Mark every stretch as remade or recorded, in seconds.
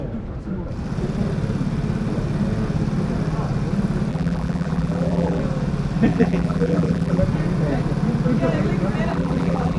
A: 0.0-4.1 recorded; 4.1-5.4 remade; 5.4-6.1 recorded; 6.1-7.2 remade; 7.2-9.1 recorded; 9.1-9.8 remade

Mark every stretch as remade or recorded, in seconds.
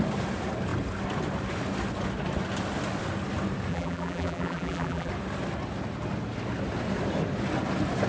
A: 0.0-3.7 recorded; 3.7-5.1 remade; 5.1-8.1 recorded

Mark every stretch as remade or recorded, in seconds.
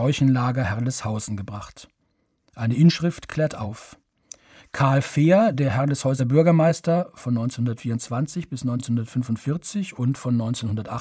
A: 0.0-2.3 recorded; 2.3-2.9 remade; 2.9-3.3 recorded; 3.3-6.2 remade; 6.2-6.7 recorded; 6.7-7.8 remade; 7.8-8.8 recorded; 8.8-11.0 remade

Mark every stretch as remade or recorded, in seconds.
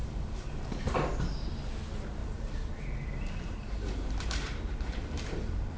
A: 0.0-0.7 remade; 0.7-2.2 recorded; 2.2-5.8 remade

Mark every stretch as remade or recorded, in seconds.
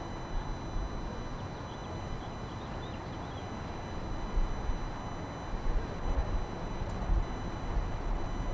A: 0.0-8.5 recorded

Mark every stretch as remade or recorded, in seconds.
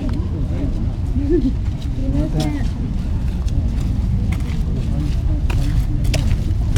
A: 0.0-6.8 recorded